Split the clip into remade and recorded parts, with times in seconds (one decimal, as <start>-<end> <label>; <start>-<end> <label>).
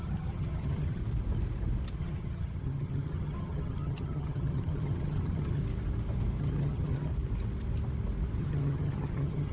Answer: 0.0-1.0 remade; 1.0-2.0 recorded; 2.0-5.6 remade; 5.6-6.4 recorded; 6.4-7.1 remade; 7.1-8.4 recorded; 8.4-9.5 remade